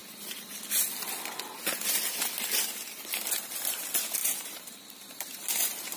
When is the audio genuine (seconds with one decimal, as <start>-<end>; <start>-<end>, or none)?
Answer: 0.0-4.2; 5.2-6.0